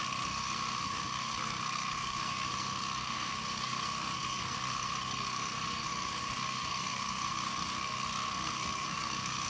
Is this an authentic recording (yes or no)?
no